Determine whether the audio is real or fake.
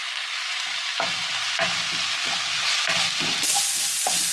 real